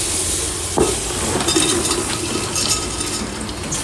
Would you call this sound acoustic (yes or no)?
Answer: yes